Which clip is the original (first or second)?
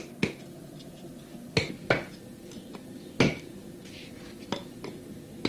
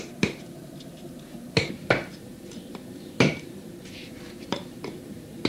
first